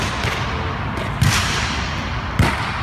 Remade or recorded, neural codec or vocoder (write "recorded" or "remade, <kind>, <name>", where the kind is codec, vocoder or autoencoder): recorded